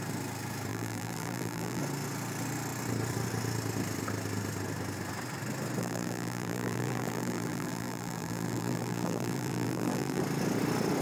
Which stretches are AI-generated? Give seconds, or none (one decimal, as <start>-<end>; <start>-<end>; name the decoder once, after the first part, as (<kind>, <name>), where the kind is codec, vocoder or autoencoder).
0.7-1.8 (vocoder, BigVGAN v2); 5.8-10.2